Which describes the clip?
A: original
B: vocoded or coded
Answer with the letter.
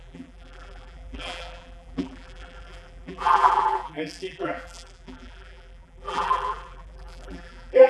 B